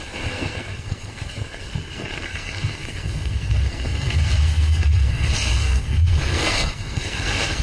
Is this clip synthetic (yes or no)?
yes